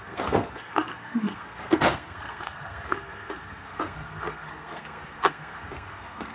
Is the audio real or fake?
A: fake